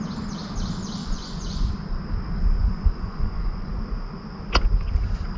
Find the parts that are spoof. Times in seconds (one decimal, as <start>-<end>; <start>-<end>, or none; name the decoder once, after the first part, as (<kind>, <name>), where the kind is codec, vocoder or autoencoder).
1.0-1.7 (vocoder, Vocos); 2.6-3.7